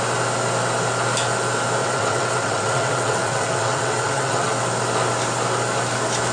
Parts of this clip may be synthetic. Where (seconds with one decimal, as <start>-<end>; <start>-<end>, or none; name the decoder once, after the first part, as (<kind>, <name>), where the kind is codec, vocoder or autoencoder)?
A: 1.8-4.5 (vocoder, WaveNeXt)